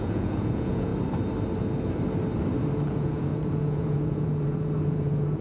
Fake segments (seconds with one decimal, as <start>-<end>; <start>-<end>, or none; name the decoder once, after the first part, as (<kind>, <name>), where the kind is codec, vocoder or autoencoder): 0.0-0.9 (vocoder, Vocos); 2.9-5.4